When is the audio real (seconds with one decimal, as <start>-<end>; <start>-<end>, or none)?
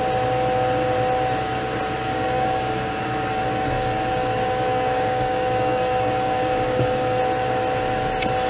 0.0-2.1; 7.2-8.5